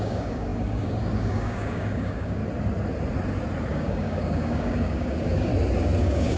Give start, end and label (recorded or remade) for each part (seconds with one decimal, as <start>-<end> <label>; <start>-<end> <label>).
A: 0.0-2.4 remade; 2.4-3.7 recorded; 3.7-5.5 remade; 5.5-6.0 recorded; 6.0-6.4 remade